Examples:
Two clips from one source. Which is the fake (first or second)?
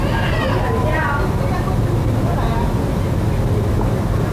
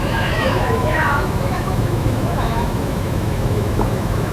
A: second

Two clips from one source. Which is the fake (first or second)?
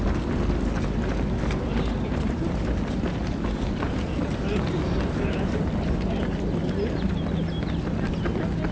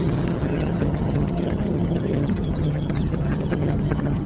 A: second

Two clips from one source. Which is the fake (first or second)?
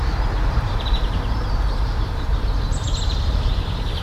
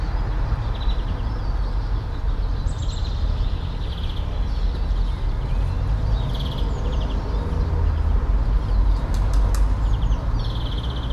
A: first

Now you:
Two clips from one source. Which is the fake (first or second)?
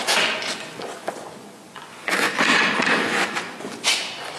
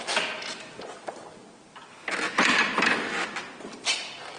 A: first